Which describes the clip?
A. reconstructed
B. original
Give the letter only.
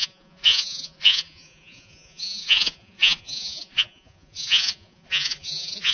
A